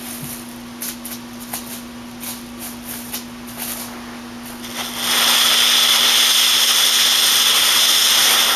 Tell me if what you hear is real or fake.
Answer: real